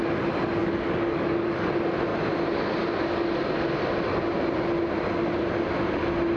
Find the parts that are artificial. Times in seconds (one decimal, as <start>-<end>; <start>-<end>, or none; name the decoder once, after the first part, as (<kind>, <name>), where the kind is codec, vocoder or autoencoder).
0.6-1.7 (codec, DAC)